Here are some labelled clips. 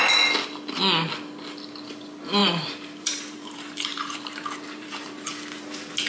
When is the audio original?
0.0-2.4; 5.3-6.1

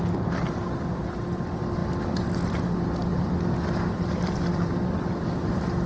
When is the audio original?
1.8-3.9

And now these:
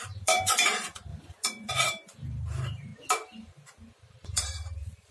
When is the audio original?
1.1-1.7; 2.9-4.1